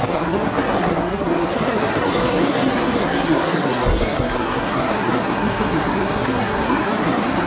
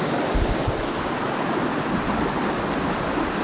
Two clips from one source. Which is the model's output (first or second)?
first